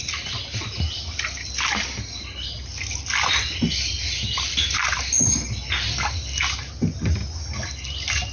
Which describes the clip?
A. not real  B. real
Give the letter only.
B